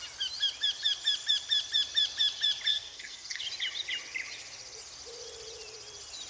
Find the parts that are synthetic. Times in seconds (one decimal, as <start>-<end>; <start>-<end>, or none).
2.7-3.4